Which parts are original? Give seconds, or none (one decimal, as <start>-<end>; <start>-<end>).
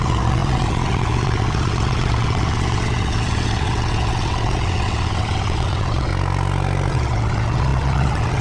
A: 6.1-6.9